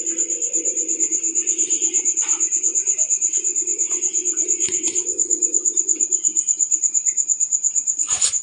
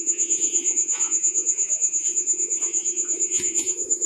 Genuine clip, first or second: first